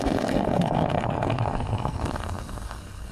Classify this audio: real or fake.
fake